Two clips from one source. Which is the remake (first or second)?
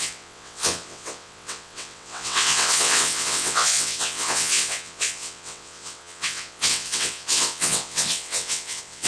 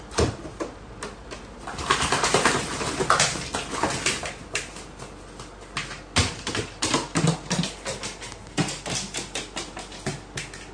first